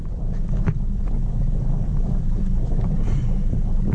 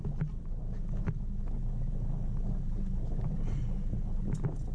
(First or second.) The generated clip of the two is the first